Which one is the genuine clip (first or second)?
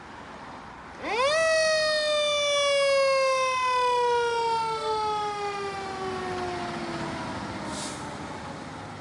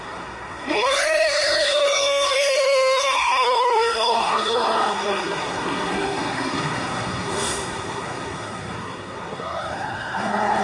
first